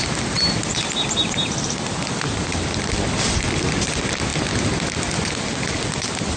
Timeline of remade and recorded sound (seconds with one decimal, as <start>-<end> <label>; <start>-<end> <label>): 0.0-6.4 recorded